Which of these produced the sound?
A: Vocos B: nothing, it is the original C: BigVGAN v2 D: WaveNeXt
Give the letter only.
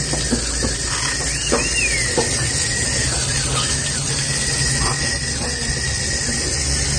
B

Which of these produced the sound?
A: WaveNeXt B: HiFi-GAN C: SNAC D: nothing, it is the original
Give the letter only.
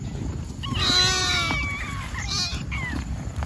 D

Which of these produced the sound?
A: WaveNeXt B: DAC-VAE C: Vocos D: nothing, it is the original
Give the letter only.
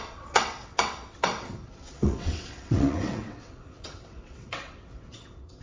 A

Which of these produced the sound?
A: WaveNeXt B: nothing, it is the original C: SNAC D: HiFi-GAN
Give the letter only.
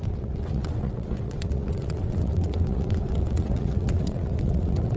A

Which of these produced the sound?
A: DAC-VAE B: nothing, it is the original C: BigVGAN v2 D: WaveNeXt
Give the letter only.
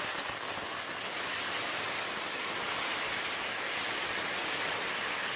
B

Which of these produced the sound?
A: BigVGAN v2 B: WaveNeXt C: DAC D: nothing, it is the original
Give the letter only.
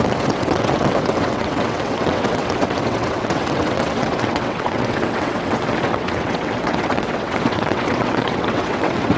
B